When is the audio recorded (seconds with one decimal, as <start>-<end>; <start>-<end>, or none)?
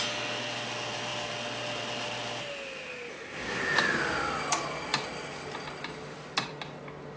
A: 0.0-3.1; 3.6-7.2